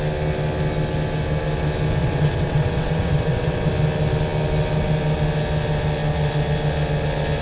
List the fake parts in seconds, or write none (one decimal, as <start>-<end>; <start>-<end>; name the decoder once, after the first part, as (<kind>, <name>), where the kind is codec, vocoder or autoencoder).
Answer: 2.0-3.7 (vocoder, WaveNeXt)